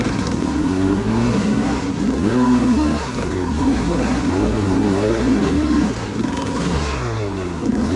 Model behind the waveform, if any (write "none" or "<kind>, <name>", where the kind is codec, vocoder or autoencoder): codec, SNAC